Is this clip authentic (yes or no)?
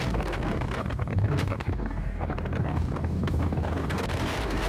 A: no